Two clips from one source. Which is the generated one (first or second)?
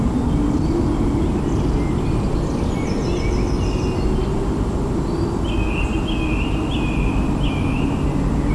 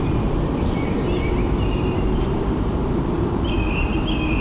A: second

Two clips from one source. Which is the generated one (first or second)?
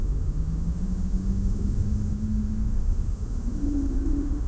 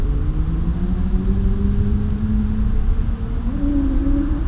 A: first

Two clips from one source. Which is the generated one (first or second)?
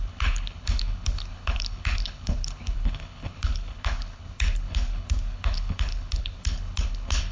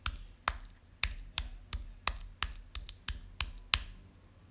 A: first